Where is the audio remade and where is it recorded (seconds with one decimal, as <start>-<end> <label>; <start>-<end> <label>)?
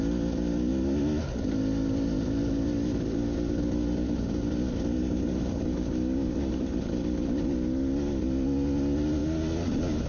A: 0.0-10.1 recorded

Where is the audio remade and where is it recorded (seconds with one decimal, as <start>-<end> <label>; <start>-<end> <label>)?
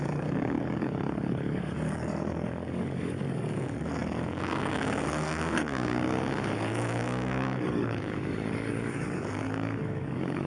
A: 0.0-10.5 remade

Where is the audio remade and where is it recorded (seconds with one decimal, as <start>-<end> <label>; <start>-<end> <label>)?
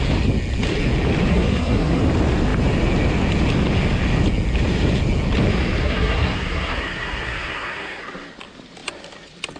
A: 0.0-1.3 recorded; 1.3-2.0 remade; 2.0-5.8 recorded; 5.8-8.0 remade; 8.0-9.6 recorded